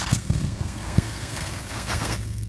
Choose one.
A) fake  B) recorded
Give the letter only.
A